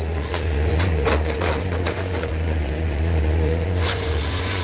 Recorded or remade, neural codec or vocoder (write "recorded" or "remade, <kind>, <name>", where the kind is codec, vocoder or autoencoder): remade, vocoder, Vocos